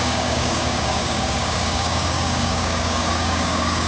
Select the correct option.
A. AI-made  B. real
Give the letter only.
A